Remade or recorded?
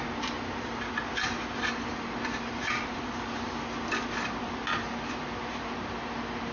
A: recorded